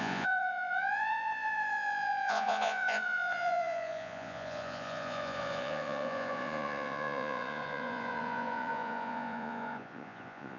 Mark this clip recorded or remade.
remade